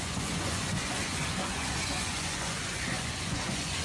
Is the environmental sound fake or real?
fake